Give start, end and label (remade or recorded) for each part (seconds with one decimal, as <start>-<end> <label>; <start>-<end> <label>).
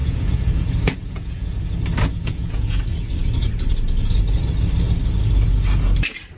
0.0-1.7 remade; 1.7-2.1 recorded; 2.1-2.8 remade; 2.8-6.4 recorded